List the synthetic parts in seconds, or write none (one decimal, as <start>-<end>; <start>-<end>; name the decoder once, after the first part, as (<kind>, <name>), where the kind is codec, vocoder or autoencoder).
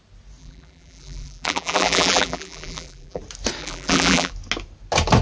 0.4-3.2 (vocoder, BigVGAN v2); 3.6-4.3